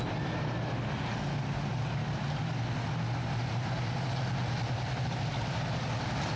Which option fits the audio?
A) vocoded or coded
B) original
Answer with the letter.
B